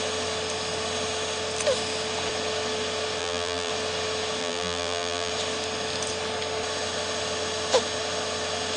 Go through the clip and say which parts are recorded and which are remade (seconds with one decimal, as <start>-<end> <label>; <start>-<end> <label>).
0.0-3.2 recorded; 3.2-3.7 remade; 3.7-4.4 recorded; 4.4-5.3 remade; 5.3-8.8 recorded